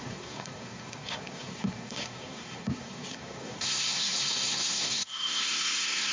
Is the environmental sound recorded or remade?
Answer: remade